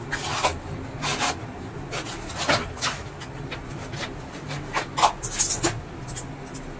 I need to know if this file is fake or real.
real